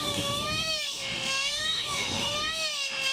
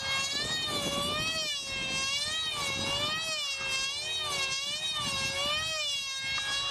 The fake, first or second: first